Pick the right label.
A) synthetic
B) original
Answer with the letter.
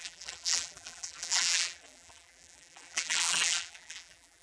A